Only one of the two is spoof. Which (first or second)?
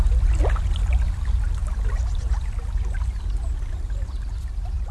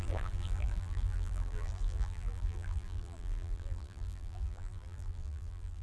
second